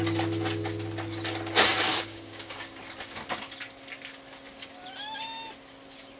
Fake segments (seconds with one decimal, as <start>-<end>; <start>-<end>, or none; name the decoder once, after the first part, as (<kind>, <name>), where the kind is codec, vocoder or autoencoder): 1.9-2.8 (codec, DAC)

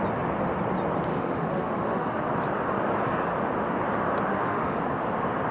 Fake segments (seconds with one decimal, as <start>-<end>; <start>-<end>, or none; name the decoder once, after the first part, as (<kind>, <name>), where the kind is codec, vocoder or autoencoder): 1.1-2.2 (autoencoder, DAC-VAE); 4.3-4.8